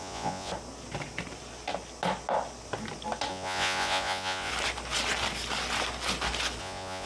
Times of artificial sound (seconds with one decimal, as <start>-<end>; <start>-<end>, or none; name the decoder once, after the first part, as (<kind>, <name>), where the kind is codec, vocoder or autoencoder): 0.0-0.5 (vocoder, Vocos); 3.3-4.5; 6.6-7.1